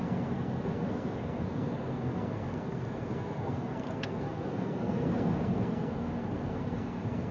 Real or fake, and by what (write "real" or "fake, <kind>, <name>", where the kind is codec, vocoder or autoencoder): fake, codec, SNAC